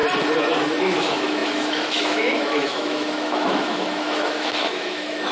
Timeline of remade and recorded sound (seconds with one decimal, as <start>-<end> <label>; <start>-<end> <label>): 0.0-0.8 recorded; 0.8-5.3 remade